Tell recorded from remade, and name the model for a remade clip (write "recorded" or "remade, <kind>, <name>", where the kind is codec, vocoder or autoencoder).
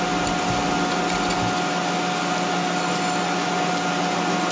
recorded